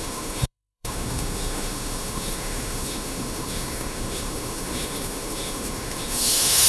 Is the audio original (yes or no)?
no